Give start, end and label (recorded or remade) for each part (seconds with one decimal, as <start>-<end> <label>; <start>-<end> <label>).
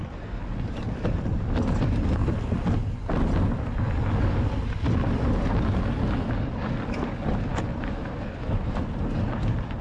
0.0-9.8 recorded